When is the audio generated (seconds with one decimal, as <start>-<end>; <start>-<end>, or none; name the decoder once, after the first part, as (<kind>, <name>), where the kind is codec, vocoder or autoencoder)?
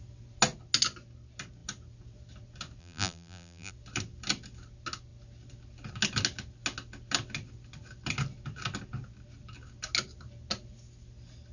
2.8-3.7 (vocoder, BigVGAN v2)